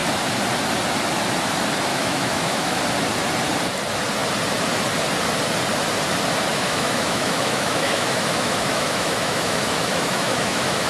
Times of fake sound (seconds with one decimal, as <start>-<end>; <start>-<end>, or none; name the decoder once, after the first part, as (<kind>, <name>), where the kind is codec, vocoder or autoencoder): 1.9-2.8 (autoencoder, DAC-VAE); 6.5-10.9